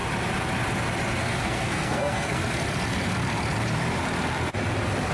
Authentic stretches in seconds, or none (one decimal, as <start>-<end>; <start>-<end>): 0.0-1.2; 2.4-5.1